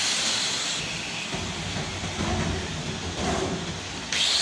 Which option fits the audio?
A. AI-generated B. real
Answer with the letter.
B